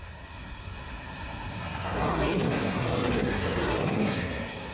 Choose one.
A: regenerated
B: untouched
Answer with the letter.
A